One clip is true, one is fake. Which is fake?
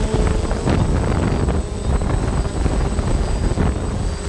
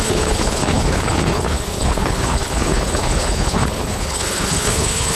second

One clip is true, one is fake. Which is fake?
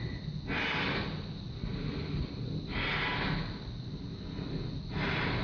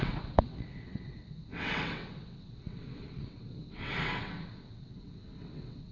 second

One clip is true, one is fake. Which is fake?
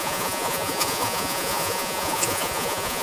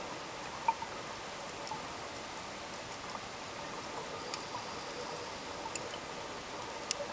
first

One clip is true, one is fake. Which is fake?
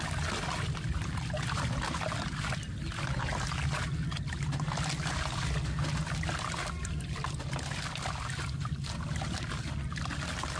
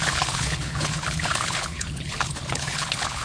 second